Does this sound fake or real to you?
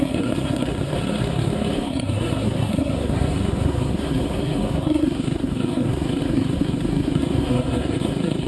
fake